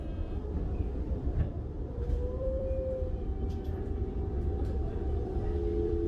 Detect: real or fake fake